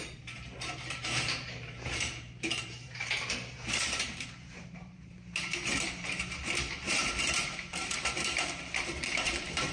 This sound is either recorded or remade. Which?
remade